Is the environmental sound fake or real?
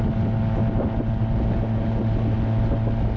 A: real